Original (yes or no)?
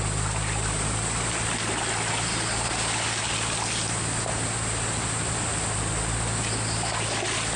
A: yes